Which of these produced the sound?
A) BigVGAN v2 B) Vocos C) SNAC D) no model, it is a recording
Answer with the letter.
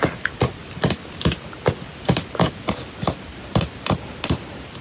A